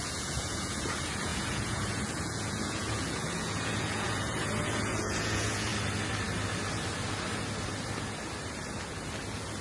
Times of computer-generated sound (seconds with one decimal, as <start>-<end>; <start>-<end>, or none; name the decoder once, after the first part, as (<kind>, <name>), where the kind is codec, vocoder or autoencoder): 0.0-5.7 (vocoder, Vocos)